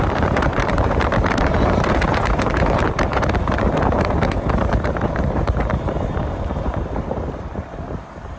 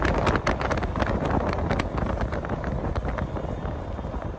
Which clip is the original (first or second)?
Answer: second